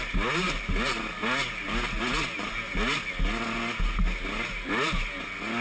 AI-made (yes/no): no